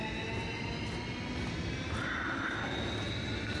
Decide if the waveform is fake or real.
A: real